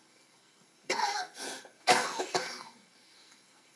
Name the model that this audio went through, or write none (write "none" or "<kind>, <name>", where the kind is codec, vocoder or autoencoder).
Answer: codec, SNAC